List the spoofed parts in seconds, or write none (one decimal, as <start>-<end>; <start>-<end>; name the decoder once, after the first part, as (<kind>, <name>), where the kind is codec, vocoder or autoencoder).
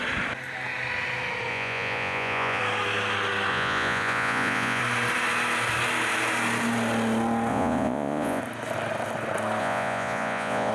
1.5-2.6 (vocoder, Vocos); 3.5-4.8; 7.5-8.4; 9.6-10.7